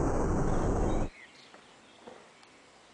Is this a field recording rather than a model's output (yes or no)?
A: yes